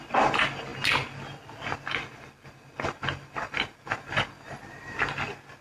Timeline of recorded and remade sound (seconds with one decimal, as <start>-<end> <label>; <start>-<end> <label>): 0.0-5.6 recorded